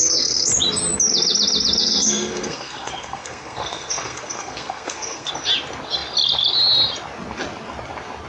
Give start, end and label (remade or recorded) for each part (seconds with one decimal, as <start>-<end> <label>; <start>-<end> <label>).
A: 0.0-0.5 remade; 0.5-1.8 recorded; 1.8-5.3 remade; 5.3-8.3 recorded